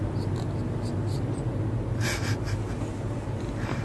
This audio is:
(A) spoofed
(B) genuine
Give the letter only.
B